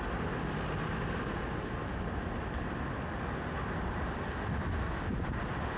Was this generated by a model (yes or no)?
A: no